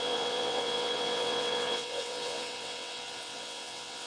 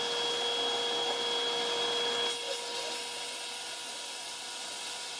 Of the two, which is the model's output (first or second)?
first